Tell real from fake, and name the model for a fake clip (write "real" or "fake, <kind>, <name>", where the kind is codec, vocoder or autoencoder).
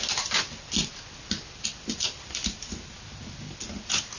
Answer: real